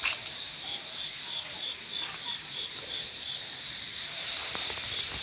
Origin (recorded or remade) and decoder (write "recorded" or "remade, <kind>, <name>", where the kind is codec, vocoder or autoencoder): remade, vocoder, BigVGAN v2